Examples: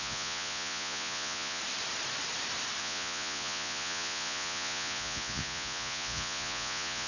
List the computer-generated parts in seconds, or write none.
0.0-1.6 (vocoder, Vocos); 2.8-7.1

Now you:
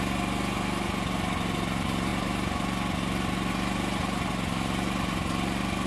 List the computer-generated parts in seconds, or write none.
none